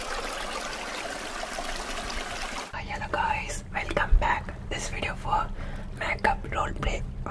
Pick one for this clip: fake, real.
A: real